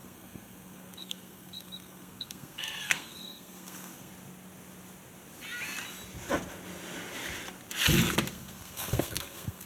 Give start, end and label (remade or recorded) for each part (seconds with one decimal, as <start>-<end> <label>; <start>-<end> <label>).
0.0-4.1 remade; 4.1-8.3 recorded; 8.3-9.7 remade